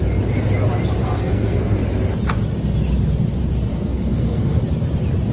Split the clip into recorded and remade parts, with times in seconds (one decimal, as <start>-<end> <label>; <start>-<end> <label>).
0.0-1.0 recorded; 1.0-1.8 remade; 1.8-3.7 recorded; 3.7-4.6 remade; 4.6-5.3 recorded

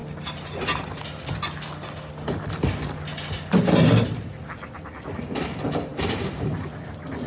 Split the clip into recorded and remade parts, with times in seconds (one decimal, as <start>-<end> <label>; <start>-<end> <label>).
0.0-7.3 recorded

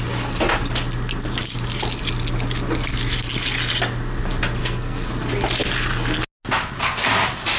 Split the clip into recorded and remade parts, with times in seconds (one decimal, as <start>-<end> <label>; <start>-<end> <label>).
0.0-4.6 recorded; 4.6-5.1 remade; 5.1-7.6 recorded

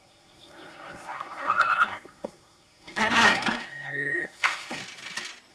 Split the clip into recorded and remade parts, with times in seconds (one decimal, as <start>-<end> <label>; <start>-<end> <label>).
0.0-4.8 remade; 4.8-5.5 recorded

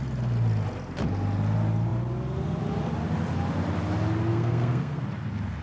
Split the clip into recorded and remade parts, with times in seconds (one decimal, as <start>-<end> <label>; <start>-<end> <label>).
0.0-4.3 recorded; 4.3-5.0 remade; 5.0-5.6 recorded

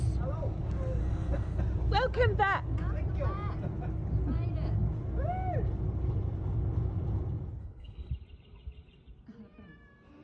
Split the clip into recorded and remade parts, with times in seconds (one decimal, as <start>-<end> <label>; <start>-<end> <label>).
0.0-1.0 recorded; 1.0-1.6 remade; 1.6-7.6 recorded; 7.6-8.1 remade; 8.1-10.2 recorded

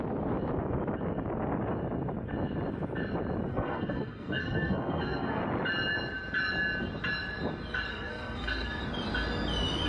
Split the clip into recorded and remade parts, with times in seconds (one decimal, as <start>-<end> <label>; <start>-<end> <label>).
0.0-3.5 recorded; 3.5-5.4 remade; 5.4-7.9 recorded; 7.9-8.8 remade; 8.8-9.9 recorded

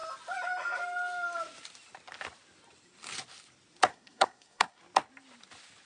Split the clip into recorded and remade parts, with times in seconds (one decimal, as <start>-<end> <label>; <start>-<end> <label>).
0.0-3.9 recorded; 3.9-4.8 remade; 4.8-5.9 recorded